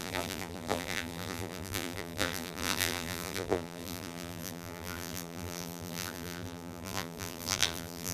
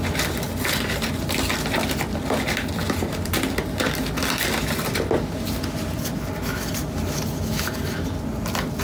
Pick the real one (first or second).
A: second